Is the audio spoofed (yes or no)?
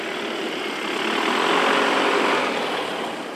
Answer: no